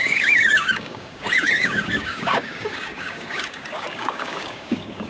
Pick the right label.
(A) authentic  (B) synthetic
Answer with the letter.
B